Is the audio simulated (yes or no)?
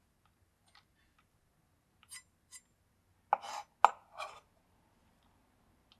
no